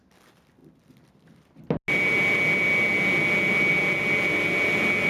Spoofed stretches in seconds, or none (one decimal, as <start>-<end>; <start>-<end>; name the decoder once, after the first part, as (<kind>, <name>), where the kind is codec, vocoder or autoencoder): none